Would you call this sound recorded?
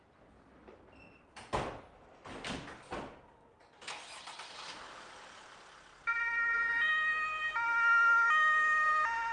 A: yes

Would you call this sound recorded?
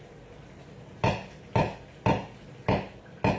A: yes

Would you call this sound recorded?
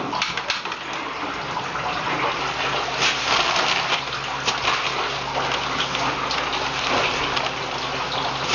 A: yes